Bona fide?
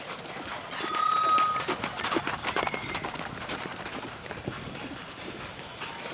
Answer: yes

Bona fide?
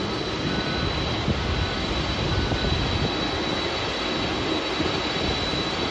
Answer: yes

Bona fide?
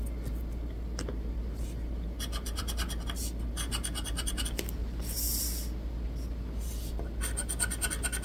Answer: yes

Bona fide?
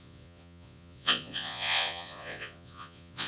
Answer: no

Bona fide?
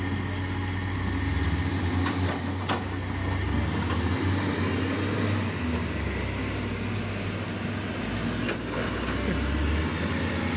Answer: yes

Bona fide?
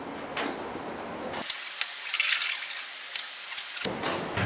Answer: yes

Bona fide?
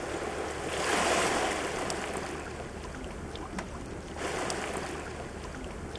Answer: yes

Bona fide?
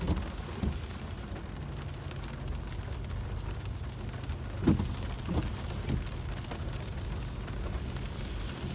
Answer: yes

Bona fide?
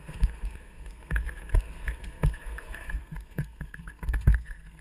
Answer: no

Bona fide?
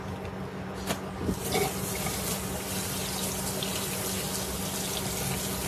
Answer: yes